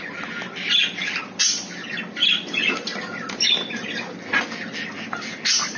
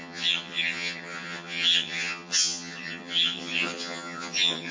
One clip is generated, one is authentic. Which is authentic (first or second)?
first